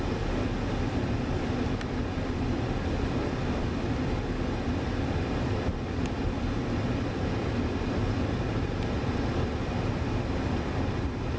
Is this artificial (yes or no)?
no